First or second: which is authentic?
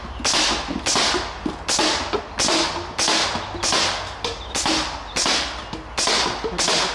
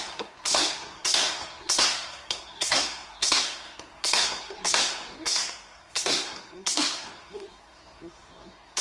first